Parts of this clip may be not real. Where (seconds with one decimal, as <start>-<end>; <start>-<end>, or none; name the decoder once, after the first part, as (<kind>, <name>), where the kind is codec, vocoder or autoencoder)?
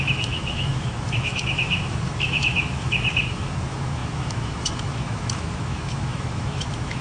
0.0-7.0 (autoencoder, DAC-VAE)